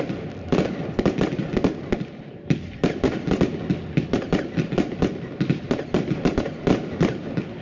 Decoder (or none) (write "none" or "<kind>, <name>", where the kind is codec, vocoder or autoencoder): none